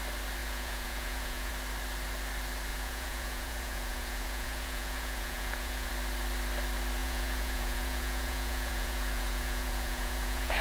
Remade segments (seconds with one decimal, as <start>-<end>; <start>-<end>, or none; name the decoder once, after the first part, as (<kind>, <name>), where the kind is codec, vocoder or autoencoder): 0.4-1.5 (vocoder, Vocos); 2.7-5.9; 7.0-10.6